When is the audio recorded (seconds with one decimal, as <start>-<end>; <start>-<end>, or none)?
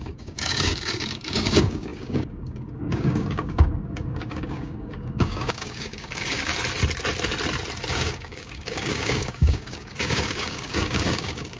6.5-7.9